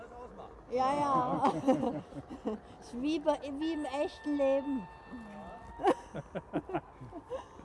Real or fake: real